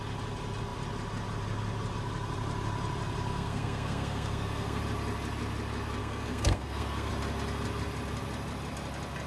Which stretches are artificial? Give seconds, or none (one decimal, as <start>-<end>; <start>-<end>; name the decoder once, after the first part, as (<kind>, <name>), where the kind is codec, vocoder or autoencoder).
3.3-4.8 (codec, SNAC); 6.0-7.1